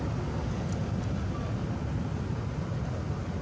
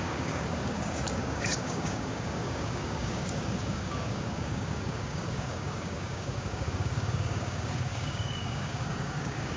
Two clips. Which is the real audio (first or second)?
first